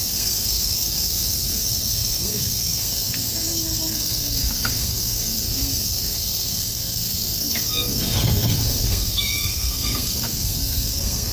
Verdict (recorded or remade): remade